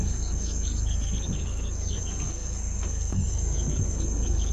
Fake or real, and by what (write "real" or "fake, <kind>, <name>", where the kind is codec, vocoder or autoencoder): fake, codec, SNAC